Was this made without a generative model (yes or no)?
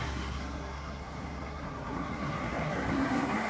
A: no